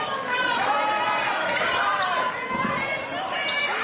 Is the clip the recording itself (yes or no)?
yes